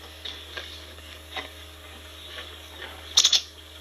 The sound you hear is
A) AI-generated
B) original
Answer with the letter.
A